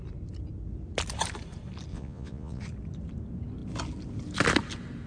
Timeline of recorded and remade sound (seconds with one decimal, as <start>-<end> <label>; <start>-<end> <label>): 0.0-1.9 recorded; 1.9-2.6 remade; 2.6-5.1 recorded